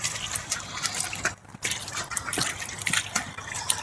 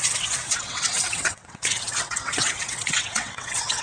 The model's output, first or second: second